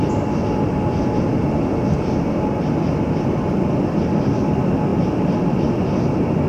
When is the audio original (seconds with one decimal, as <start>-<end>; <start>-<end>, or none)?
0.0-6.5